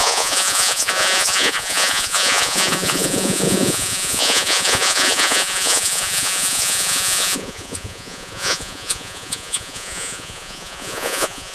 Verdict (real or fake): fake